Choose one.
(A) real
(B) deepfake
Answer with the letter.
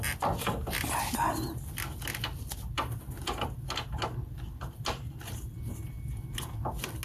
A